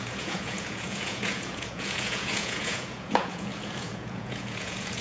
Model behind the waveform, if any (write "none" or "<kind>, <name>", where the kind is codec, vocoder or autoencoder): vocoder, Vocos